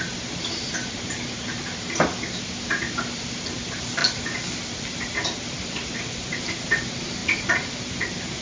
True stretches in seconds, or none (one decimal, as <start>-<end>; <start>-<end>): 0.0-8.4

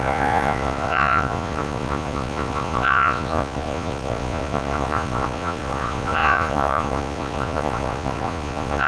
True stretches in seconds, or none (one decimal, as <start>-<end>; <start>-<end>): none